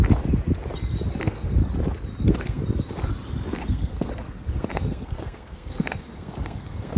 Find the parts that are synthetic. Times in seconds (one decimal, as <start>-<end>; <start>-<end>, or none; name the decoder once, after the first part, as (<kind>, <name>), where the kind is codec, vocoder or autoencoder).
1.2-1.6 (codec, SNAC); 2.2-2.6; 3.7-7.0